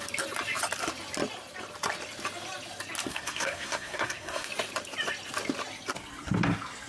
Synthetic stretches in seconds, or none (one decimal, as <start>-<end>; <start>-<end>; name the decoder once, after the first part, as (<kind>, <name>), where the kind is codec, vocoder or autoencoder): 3.1-4.5 (codec, SNAC)